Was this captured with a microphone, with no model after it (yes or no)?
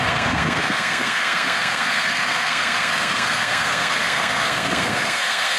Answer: no